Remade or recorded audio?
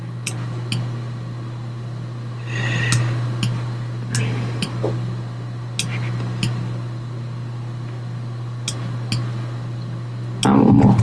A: recorded